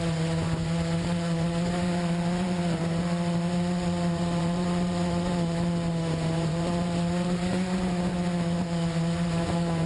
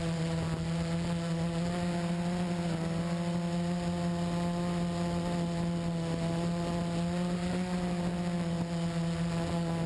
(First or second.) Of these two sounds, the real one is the second